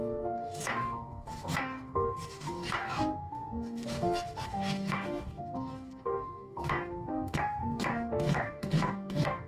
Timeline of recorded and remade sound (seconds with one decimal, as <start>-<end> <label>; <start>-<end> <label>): 0.0-9.5 remade